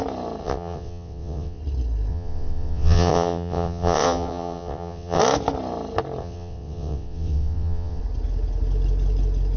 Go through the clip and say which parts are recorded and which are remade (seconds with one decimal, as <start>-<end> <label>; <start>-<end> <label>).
0.0-0.4 recorded; 0.4-1.6 remade; 1.6-2.1 recorded; 2.1-5.2 remade; 5.2-6.2 recorded; 6.2-8.0 remade; 8.0-9.6 recorded